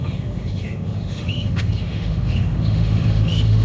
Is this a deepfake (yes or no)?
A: yes